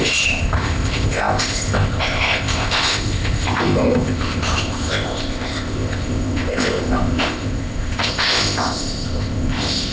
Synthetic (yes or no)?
yes